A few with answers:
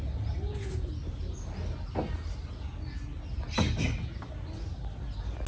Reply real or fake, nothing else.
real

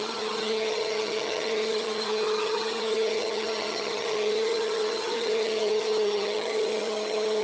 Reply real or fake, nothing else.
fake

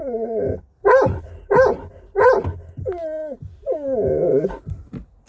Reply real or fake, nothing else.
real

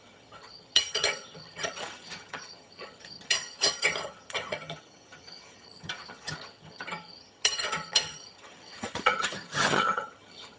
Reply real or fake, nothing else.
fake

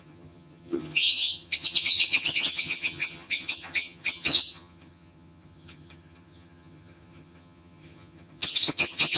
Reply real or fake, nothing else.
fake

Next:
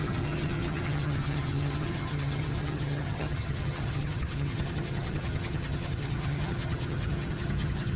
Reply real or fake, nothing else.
fake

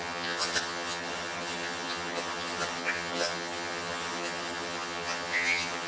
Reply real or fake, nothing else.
fake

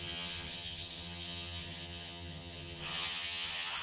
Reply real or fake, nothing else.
fake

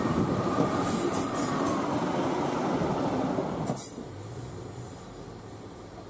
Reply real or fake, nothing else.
real